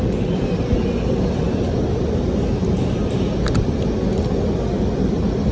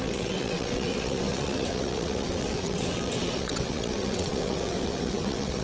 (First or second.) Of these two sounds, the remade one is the second